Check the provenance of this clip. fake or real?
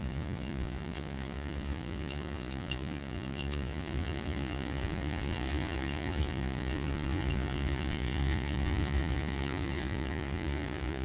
fake